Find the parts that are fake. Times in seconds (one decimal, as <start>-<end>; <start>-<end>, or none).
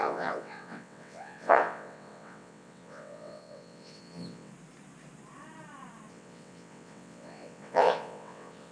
0.0-4.5; 6.1-8.7